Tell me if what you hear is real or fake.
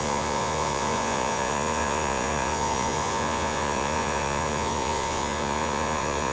fake